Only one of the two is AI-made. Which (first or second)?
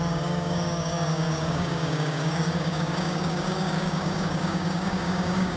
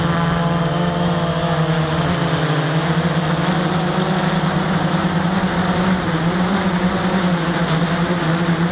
first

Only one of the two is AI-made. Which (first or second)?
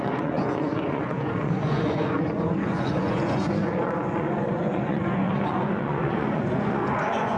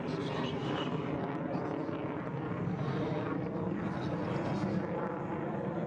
first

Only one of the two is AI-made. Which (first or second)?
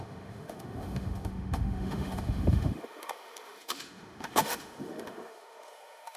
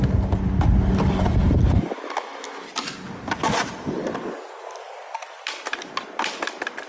first